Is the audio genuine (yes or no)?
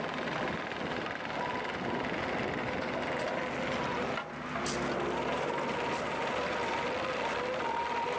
yes